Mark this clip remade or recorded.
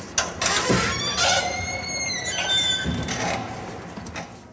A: recorded